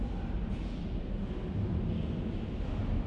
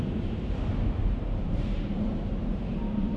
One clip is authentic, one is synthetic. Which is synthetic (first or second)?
second